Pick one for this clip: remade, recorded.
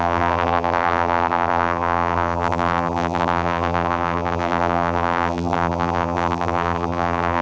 remade